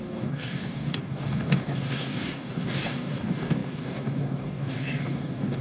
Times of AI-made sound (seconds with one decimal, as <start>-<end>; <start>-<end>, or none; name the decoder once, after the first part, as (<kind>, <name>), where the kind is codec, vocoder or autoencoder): 0.0-5.6 (codec, DAC)